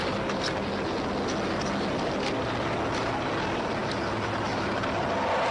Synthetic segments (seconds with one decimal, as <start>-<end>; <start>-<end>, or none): none